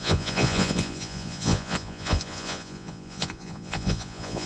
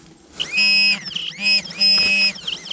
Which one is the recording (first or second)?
second